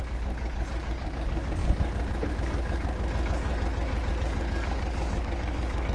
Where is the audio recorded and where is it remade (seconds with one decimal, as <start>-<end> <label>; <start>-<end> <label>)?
0.0-3.5 remade; 3.5-4.1 recorded; 4.1-5.9 remade